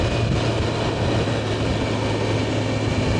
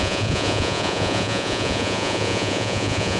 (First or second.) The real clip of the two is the first